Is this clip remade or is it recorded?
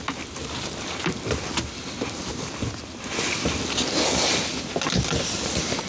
recorded